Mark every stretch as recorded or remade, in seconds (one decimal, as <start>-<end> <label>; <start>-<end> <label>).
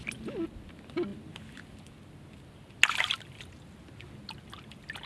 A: 0.0-5.1 recorded